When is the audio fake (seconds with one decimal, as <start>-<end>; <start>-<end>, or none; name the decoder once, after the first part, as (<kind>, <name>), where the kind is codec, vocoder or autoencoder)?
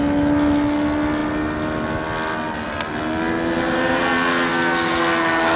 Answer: none